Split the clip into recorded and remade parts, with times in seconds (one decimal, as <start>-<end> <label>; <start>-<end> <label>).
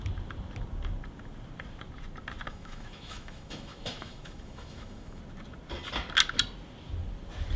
0.0-2.5 recorded; 2.5-5.2 remade; 5.2-7.6 recorded